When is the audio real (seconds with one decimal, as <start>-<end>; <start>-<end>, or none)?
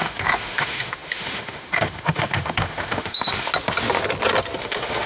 3.5-4.6